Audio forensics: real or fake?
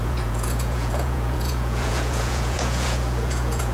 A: fake